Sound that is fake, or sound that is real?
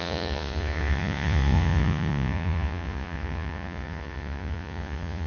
fake